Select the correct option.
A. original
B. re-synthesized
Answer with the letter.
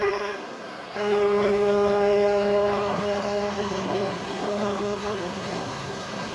B